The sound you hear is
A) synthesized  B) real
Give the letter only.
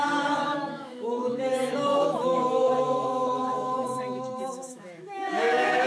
A